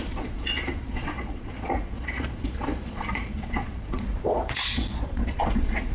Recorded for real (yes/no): no